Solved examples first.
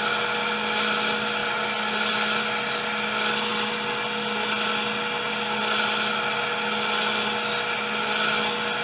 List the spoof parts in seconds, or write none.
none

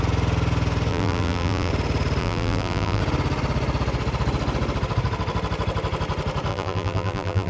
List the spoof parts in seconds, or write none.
0.9-1.7 (vocoder, BigVGAN v2); 2.2-3.0; 6.5-7.5

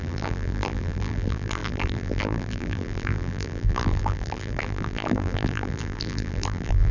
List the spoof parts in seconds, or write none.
0.0-6.9 (vocoder, BigVGAN v2)

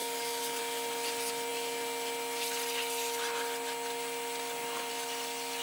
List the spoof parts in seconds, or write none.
0.0-0.6 (codec, DAC)

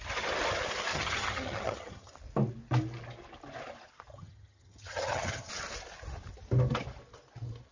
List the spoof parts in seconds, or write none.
0.9-2.1 (vocoder, HiFi-GAN); 4.1-5.5

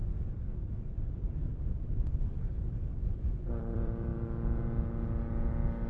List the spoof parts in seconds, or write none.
0.0-0.5 (vocoder, BigVGAN v2); 2.1-2.9; 3.6-4.1

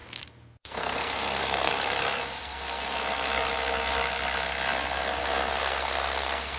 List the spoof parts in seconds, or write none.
0.6-1.7 (codec, SNAC); 2.4-2.8; 5.5-6.6

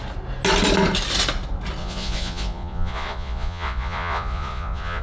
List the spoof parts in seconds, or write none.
1.8-5.0 (vocoder, Vocos)